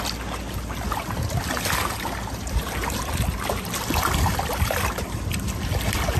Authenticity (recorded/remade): recorded